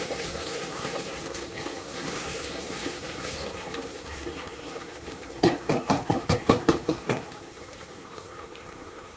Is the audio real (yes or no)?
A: no